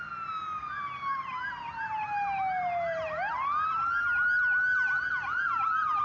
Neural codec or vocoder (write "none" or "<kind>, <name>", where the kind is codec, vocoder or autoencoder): none